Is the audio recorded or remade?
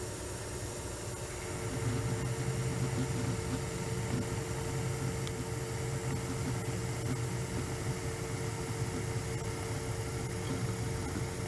recorded